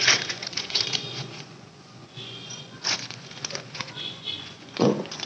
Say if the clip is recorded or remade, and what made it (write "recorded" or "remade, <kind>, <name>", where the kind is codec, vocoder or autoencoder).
remade, vocoder, Vocos